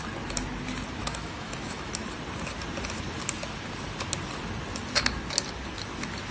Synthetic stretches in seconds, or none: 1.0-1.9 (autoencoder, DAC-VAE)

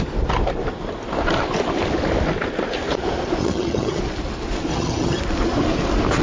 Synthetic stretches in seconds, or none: 3.4-4.0 (vocoder, HiFi-GAN); 4.7-5.2

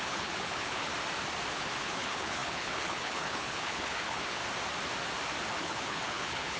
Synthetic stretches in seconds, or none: 0.0-0.9 (codec, HILCodec); 1.5-4.4; 5.5-6.6